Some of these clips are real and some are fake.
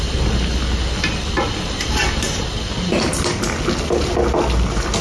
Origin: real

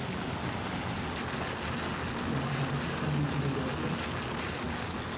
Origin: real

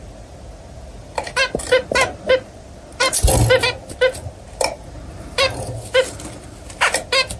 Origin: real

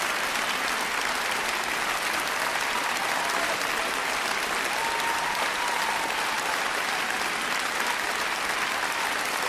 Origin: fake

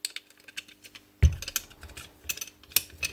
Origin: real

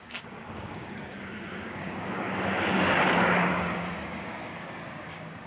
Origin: fake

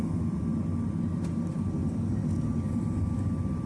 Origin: real